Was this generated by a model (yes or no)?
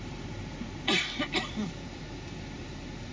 yes